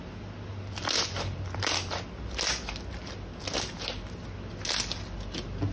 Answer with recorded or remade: recorded